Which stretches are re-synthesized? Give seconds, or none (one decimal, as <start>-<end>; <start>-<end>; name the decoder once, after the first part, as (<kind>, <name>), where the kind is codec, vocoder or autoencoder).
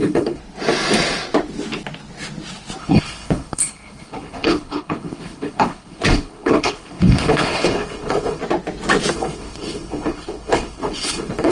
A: 0.0-0.4 (codec, HILCodec); 2.8-8.4; 9.1-11.5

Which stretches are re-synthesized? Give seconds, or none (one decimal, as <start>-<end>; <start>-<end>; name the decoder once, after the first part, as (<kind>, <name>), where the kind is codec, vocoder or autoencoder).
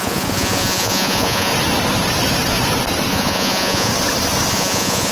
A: 0.0-1.5 (vocoder, Vocos); 3.1-3.9; 4.5-5.1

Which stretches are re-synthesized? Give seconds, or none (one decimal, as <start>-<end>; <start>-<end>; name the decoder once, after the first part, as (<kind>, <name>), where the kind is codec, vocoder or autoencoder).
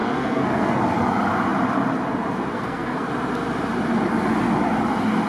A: 0.0-0.8 (codec, SNAC); 2.5-3.1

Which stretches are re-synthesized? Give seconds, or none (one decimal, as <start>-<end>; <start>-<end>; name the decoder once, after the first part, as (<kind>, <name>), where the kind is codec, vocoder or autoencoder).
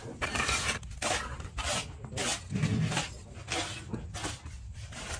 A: none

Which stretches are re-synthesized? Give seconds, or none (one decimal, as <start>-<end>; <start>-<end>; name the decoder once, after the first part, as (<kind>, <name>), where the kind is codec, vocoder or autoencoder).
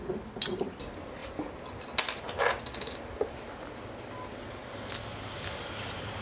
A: none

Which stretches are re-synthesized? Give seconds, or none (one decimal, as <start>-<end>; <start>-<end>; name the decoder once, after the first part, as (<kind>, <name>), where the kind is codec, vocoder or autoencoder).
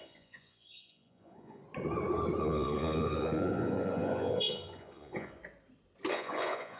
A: 0.0-1.6 (vocoder, Vocos); 2.4-5.4; 6.1-6.8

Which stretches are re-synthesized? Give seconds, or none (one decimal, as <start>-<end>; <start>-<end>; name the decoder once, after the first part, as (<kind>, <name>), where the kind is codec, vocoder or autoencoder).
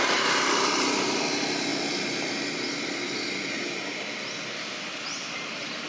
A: none